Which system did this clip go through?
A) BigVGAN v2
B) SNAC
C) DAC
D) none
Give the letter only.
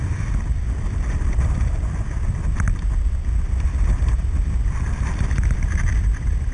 D